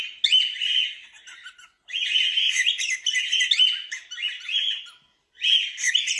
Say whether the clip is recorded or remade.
recorded